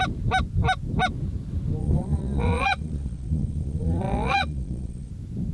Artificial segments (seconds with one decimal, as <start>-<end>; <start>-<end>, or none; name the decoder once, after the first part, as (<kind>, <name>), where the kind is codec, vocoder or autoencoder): 1.8-5.1 (vocoder, Vocos)